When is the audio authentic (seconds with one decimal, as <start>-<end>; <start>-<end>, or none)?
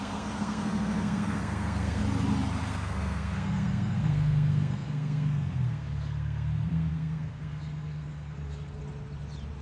2.0-2.6; 8.8-9.6